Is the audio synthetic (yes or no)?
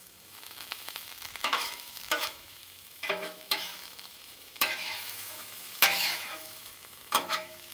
yes